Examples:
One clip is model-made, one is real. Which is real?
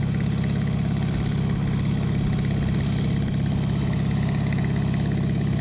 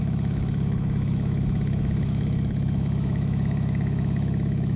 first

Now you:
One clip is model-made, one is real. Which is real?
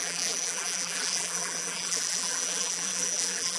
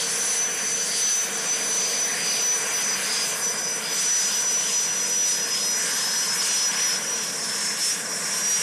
second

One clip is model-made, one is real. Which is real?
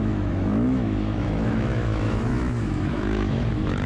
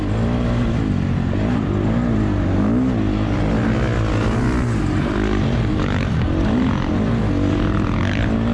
second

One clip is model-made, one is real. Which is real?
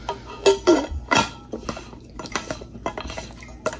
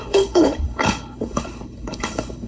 first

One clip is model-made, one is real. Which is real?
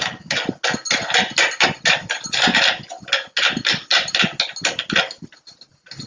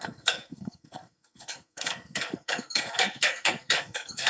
first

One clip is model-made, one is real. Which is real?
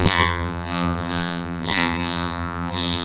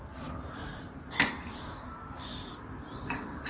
second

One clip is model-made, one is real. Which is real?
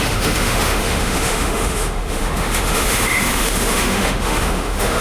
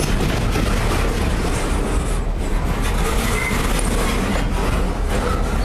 second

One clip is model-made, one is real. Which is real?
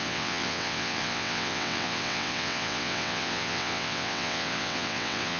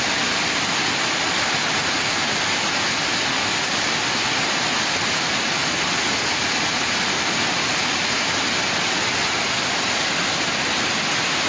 second